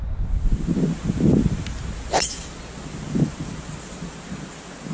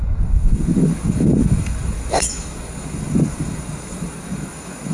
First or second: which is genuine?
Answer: first